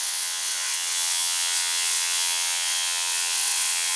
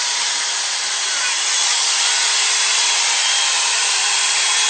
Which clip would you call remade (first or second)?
first